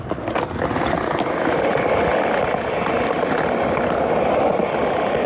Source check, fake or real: real